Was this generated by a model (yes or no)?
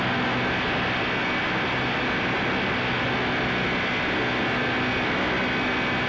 no